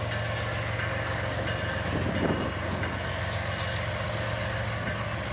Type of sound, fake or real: real